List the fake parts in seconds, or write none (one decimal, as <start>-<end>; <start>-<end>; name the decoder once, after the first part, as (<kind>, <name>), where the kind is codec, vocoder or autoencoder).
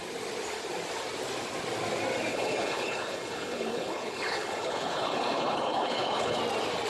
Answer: 2.3-6.4 (codec, HILCodec)